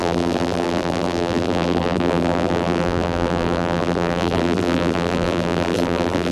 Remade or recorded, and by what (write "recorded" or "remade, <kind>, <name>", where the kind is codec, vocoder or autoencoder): remade, vocoder, BigVGAN v2